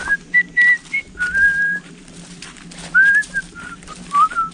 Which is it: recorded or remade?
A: recorded